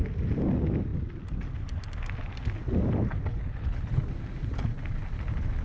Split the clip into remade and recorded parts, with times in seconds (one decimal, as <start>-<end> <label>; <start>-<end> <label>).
0.0-3.3 recorded; 3.3-4.0 remade; 4.0-5.6 recorded